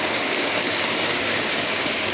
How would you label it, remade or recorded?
remade